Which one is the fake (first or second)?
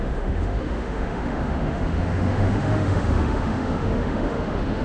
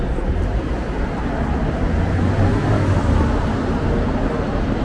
first